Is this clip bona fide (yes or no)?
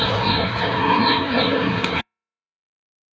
no